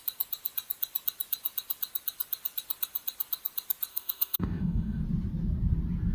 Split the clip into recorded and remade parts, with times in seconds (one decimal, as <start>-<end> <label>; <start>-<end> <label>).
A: 0.0-3.9 recorded; 3.9-5.0 remade; 5.0-6.1 recorded

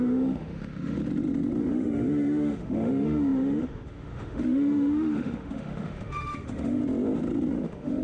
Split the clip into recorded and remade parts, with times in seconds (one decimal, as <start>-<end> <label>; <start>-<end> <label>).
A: 0.0-1.0 remade; 1.0-1.6 recorded; 1.6-6.8 remade; 6.8-7.5 recorded; 7.5-8.0 remade